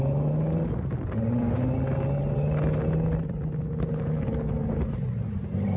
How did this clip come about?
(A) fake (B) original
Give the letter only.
B